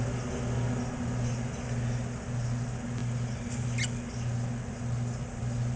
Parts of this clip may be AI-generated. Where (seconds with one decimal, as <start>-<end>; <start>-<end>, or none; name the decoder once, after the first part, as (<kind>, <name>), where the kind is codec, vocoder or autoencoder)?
none